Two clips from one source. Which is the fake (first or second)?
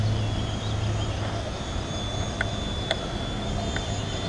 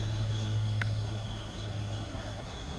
second